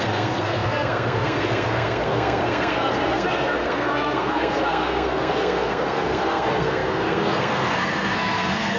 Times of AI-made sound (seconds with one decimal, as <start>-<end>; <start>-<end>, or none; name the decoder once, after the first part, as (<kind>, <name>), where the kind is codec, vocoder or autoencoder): 0.0-8.8 (codec, SNAC)